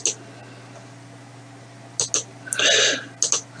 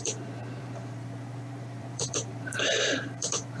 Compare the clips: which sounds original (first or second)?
first